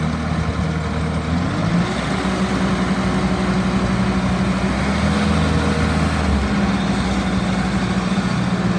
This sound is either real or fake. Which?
real